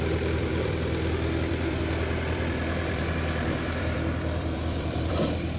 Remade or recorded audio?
remade